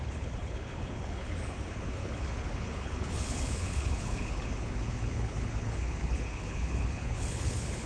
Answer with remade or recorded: remade